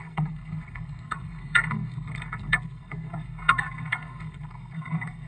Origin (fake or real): fake